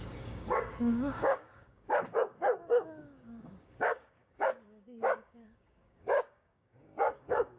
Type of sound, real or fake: fake